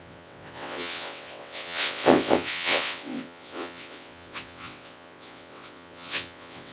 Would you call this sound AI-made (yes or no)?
yes